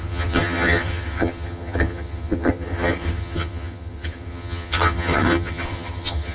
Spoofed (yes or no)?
yes